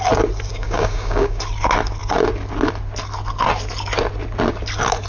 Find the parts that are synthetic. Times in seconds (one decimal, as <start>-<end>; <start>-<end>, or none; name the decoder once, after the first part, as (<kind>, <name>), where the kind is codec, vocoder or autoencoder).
0.5-1.4 (codec, DAC)